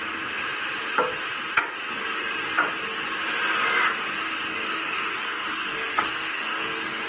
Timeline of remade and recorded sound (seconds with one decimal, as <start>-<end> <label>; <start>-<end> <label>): 0.0-4.5 recorded; 4.5-7.1 remade